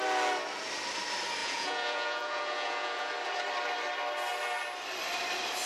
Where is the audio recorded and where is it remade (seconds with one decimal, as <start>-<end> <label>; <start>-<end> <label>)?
0.0-1.4 recorded; 1.4-3.1 remade; 3.1-5.7 recorded